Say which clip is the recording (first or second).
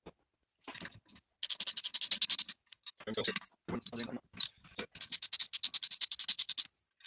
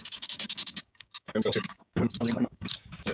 first